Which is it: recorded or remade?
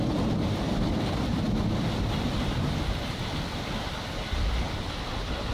recorded